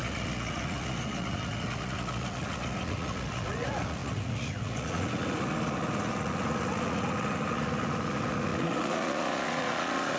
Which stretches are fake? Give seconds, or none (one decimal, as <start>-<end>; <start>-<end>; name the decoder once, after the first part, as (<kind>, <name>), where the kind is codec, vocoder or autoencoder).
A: 0.0-10.2 (vocoder, Vocos)

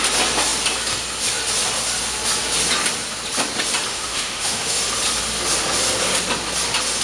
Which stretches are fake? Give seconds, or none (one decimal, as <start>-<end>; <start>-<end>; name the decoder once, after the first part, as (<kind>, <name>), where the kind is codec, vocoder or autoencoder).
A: 3.9-4.8 (autoencoder, DAC-VAE)

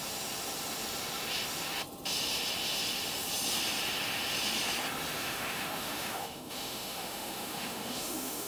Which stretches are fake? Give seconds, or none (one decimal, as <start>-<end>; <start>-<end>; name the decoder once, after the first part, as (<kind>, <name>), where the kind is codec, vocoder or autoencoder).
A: 5.2-8.5 (autoencoder, DAC-VAE)

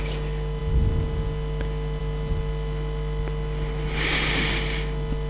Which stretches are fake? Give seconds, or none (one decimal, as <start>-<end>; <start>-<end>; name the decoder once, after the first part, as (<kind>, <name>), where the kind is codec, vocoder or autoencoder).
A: none

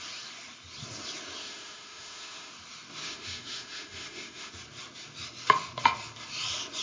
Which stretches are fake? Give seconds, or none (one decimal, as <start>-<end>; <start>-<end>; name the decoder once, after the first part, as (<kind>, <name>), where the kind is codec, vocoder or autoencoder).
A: 1.4-2.5 (autoencoder, DAC-VAE); 3.0-4.5

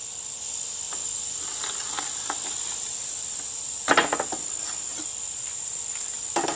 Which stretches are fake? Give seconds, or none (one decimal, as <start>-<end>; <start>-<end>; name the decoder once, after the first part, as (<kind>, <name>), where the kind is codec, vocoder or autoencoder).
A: 5.1-6.6 (vocoder, BigVGAN v2)

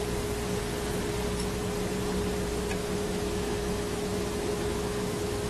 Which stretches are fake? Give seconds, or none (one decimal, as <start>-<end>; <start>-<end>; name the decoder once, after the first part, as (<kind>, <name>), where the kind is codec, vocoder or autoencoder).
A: 2.8-5.5 (autoencoder, DAC-VAE)